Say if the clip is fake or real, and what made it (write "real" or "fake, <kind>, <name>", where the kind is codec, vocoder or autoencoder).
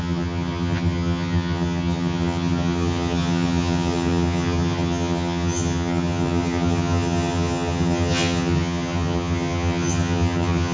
fake, vocoder, HiFi-GAN